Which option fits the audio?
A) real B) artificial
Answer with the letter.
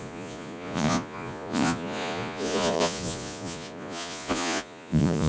B